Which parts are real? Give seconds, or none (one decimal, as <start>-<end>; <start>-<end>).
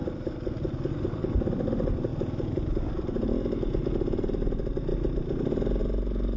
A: 0.0-6.4